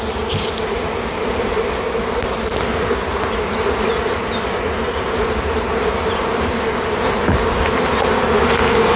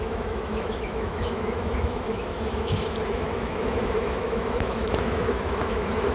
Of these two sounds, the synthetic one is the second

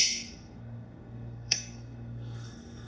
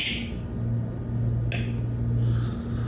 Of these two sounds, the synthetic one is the first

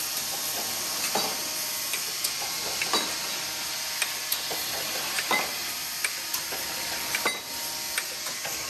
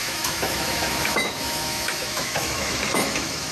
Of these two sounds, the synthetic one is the second